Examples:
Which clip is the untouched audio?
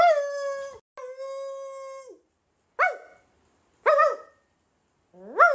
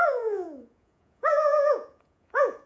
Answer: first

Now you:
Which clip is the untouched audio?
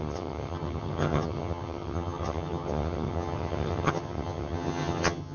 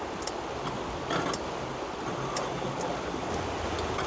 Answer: second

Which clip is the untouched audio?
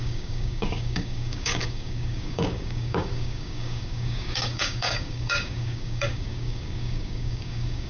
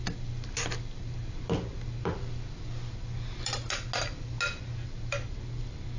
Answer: second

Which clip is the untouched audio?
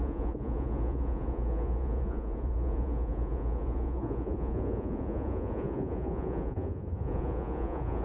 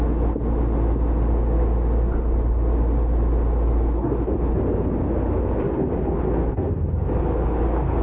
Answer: second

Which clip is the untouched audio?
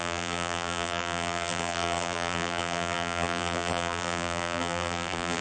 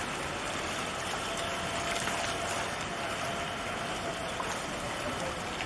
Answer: second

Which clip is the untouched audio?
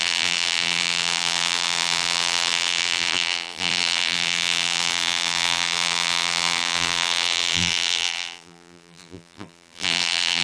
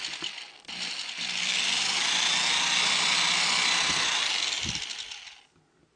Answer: second